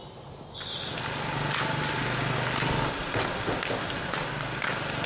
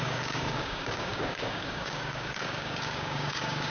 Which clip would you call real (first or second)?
first